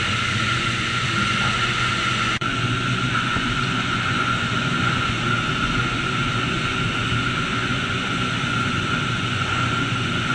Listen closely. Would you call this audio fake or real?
fake